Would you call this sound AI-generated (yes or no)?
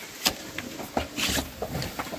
no